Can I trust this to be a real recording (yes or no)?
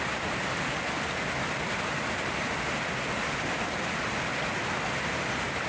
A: yes